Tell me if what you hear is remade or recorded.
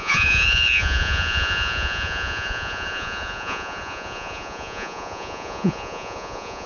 remade